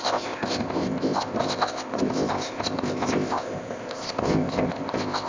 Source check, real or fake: fake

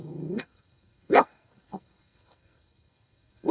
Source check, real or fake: fake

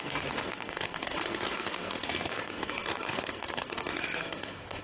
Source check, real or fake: fake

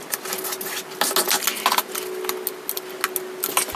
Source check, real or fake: real